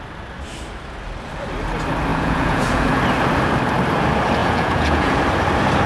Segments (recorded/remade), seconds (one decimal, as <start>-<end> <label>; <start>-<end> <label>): 0.0-2.1 recorded; 2.1-3.0 remade; 3.0-4.4 recorded; 4.4-5.2 remade; 5.2-5.9 recorded